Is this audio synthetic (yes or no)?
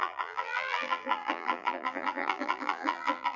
yes